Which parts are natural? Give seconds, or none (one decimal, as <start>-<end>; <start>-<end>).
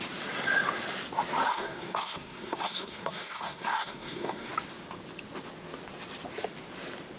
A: 0.0-1.5; 4.5-7.2